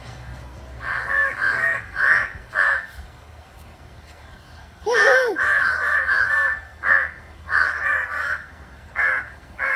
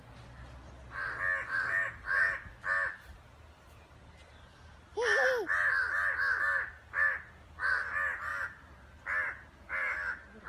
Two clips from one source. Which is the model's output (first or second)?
first